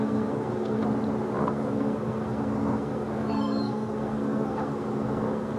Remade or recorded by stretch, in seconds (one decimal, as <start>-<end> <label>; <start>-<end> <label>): 0.0-0.8 remade; 0.8-1.4 recorded; 1.4-5.6 remade

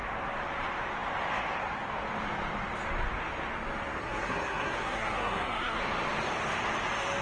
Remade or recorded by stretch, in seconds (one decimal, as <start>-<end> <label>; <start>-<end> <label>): 0.0-4.0 recorded; 4.0-5.8 remade; 5.8-7.2 recorded

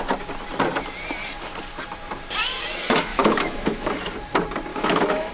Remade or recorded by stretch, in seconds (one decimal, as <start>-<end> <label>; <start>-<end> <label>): 0.0-3.1 recorded; 3.1-3.9 remade; 3.9-4.7 recorded; 4.7-5.3 remade

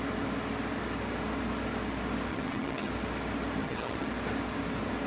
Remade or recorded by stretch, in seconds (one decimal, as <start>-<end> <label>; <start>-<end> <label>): 0.0-2.3 recorded; 2.3-2.9 remade; 2.9-3.6 recorded; 3.6-4.1 remade; 4.1-5.1 recorded

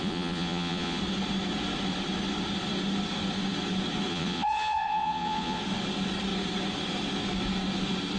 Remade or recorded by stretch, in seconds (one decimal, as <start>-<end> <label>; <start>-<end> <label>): 0.0-1.0 remade; 1.0-4.1 recorded; 4.1-5.6 remade; 5.6-8.2 recorded

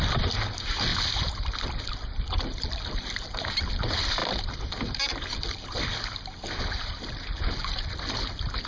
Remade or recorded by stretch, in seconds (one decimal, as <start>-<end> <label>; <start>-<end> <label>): 0.0-8.7 recorded